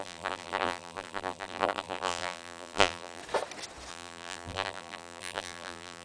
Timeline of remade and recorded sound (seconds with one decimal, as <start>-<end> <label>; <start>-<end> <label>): 0.0-3.2 remade; 3.2-3.9 recorded; 3.9-6.0 remade